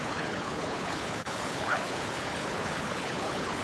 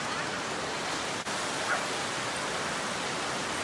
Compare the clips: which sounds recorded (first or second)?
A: second